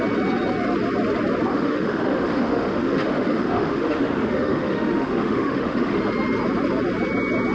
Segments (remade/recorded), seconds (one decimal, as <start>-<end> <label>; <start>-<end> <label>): 0.0-1.5 recorded; 1.5-6.0 remade; 6.0-7.5 recorded